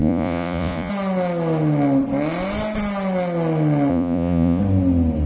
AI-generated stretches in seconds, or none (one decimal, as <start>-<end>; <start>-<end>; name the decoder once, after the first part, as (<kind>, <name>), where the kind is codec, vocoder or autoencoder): 0.0-0.9 (vocoder, Vocos); 3.9-4.6